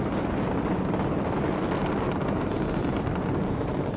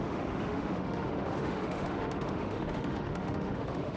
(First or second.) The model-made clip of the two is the second